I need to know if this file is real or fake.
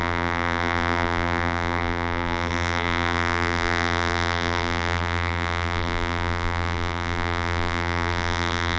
fake